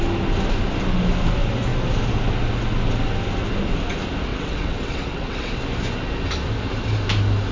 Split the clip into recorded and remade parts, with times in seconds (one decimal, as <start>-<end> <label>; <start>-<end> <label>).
0.0-4.3 recorded; 4.3-5.6 remade; 5.6-7.5 recorded